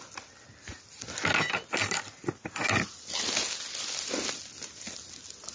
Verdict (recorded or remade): recorded